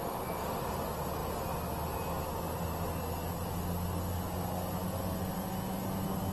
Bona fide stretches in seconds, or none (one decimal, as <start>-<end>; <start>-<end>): 0.0-6.3